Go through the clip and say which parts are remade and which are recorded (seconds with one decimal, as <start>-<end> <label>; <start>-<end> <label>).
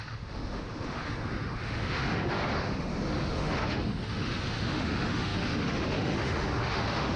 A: 0.0-7.2 remade